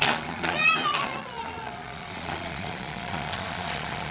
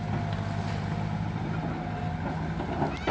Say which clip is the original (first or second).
second